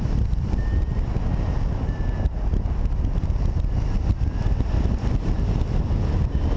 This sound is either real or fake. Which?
real